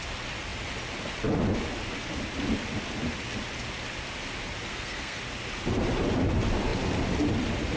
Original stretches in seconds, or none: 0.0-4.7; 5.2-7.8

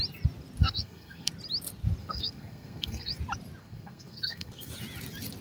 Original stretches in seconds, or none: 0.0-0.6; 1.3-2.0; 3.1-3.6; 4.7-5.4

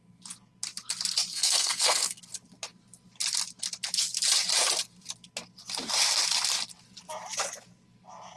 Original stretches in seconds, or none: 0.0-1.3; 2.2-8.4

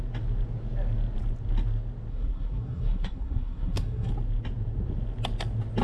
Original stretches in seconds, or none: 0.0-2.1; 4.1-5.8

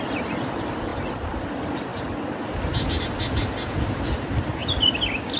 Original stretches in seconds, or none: 0.0-5.4

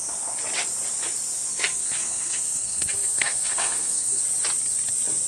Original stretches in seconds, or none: 0.0-1.8; 4.2-5.3